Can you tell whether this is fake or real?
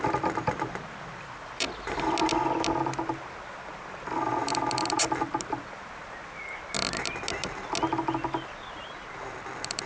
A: real